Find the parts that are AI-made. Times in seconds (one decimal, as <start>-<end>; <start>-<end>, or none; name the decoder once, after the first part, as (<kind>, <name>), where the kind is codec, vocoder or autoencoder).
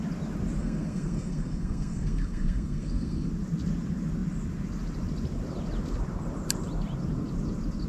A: 0.6-3.3 (codec, SNAC)